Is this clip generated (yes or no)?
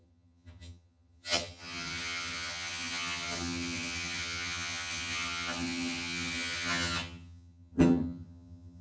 yes